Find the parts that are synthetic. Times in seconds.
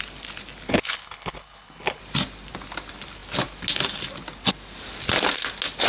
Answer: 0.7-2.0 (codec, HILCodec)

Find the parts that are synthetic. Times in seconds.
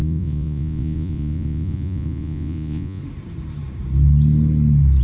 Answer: 0.0-3.0 (vocoder, Vocos)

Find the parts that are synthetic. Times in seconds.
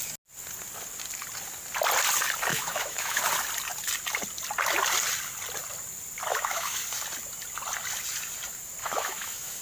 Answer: 2.5-3.2 (autoencoder, DAC-VAE); 6.3-6.8; 8.8-9.6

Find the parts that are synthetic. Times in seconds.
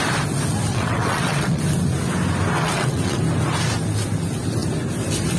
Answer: 0.7-1.6 (vocoder, WaveNeXt); 2.6-3.2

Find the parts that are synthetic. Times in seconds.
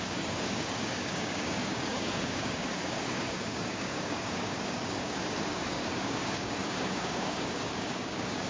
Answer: 0.0-8.5 (codec, DAC)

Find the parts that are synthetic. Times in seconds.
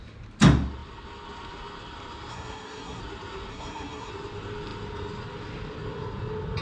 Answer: 2.3-3.0 (codec, SNAC); 3.5-4.1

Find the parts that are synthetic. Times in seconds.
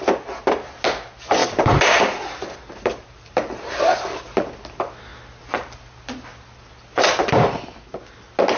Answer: 1.4-3.7 (vocoder, BigVGAN v2)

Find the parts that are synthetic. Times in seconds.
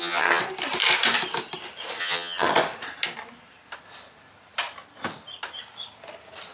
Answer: 0.0-0.4 (vocoder, HiFi-GAN); 2.0-2.5